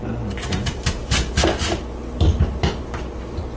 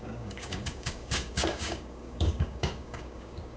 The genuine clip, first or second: first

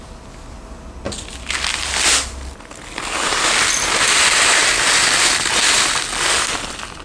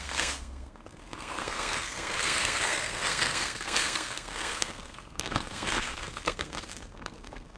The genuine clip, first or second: first